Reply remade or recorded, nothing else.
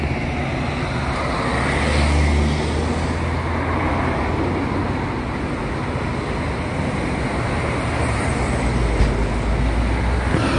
recorded